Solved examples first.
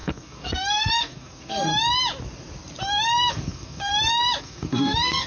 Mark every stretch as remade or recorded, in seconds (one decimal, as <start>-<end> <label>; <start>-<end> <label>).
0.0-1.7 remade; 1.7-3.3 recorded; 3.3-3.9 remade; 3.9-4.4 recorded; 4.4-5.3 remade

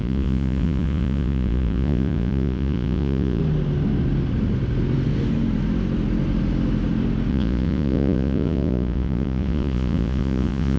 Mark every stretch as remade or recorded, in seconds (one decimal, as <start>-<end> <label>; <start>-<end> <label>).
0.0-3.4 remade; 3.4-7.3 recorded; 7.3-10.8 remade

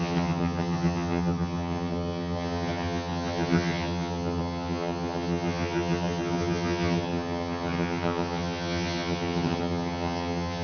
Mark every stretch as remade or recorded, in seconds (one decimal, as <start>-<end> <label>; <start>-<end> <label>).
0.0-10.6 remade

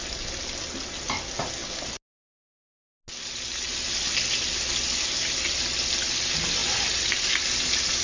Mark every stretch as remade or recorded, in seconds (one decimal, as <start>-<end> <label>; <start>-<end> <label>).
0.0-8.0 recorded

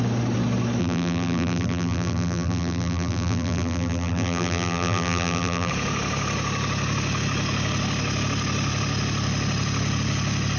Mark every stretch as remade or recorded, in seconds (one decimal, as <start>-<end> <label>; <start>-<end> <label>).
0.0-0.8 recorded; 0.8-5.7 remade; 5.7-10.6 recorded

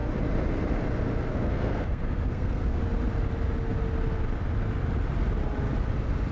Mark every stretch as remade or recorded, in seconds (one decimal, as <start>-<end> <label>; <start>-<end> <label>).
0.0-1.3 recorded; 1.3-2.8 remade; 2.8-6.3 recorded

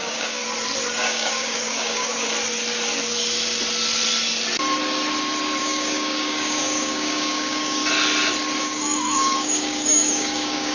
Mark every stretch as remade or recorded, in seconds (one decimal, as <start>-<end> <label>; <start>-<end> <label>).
0.0-0.4 remade; 0.4-1.0 recorded; 1.0-2.1 remade; 2.1-5.6 recorded; 5.6-7.8 remade; 7.8-8.6 recorded; 8.6-10.7 remade

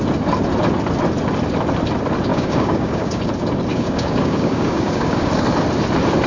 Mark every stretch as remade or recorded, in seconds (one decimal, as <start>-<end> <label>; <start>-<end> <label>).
0.0-2.3 recorded; 2.3-3.2 remade; 3.2-3.7 recorded; 3.7-5.3 remade; 5.3-6.3 recorded